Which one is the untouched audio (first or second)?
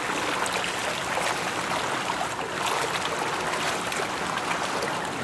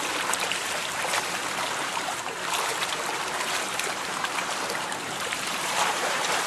first